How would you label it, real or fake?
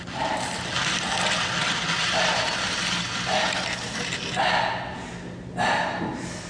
real